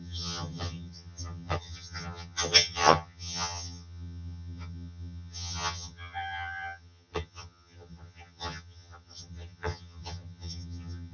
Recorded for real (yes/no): no